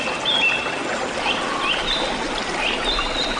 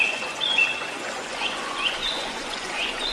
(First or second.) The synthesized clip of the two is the second